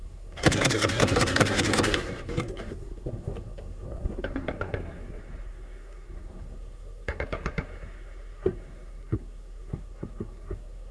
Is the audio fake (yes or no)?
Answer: yes